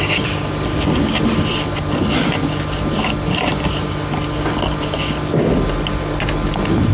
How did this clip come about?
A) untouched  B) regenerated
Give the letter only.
A